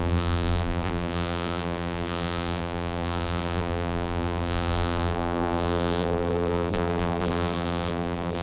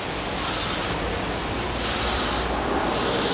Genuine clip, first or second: second